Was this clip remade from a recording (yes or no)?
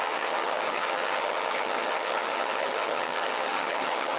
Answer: yes